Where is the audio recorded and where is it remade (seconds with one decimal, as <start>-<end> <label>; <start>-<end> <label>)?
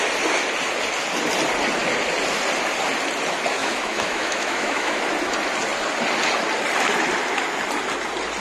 0.0-3.6 recorded; 3.6-5.0 remade; 5.0-8.4 recorded